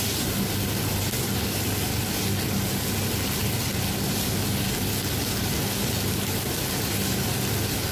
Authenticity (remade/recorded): recorded